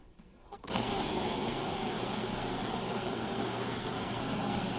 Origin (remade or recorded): remade